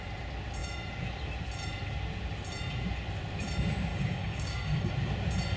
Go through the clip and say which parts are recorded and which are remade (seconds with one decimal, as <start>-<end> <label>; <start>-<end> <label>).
0.0-3.9 recorded; 3.9-4.9 remade; 4.9-5.6 recorded